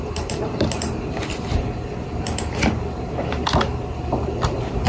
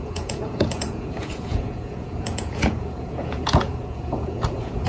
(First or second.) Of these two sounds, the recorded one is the first